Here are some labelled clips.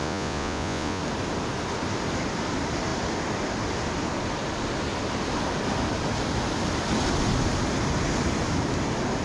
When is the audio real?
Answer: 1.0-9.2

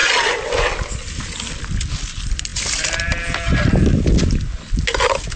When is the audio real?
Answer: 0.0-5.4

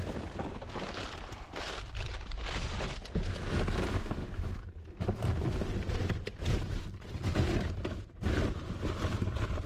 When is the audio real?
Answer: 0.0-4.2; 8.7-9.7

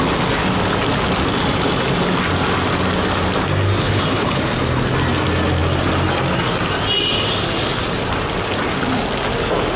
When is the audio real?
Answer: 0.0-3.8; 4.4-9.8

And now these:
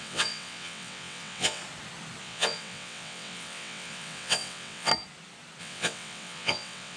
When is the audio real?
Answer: 1.6-2.2; 4.9-5.6